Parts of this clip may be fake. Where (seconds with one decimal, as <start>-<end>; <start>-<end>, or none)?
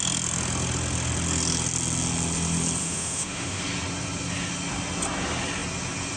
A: 2.8-3.6